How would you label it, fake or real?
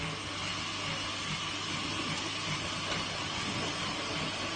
real